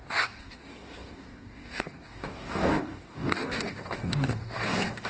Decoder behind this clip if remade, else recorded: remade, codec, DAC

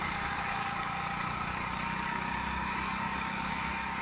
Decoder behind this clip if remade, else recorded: remade, codec, DAC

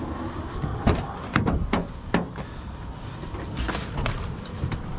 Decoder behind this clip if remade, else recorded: recorded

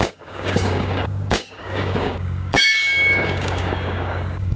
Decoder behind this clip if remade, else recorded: remade, codec, DAC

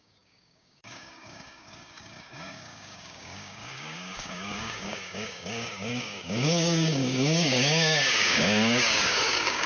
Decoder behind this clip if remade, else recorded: remade, codec, DAC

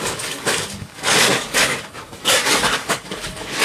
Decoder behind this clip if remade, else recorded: remade, codec, DAC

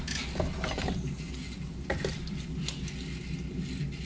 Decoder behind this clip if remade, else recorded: recorded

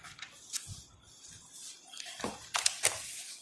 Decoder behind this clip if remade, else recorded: recorded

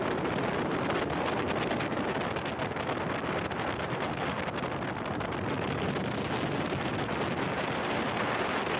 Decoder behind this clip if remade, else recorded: recorded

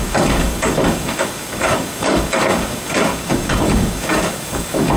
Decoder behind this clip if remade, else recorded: remade, codec, DAC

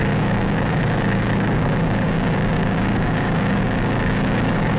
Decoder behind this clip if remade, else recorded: remade, codec, DAC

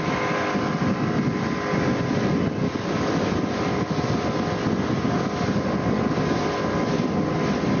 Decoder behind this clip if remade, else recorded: recorded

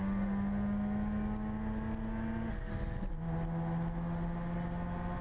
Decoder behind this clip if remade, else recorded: recorded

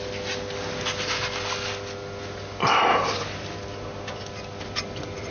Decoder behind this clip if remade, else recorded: recorded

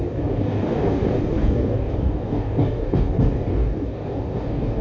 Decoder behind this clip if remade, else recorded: remade, codec, DAC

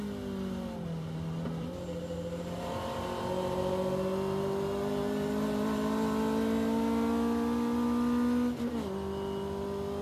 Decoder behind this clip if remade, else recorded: recorded